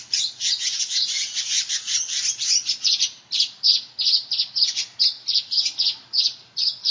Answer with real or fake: real